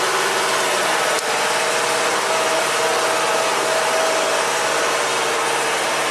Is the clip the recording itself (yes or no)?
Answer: yes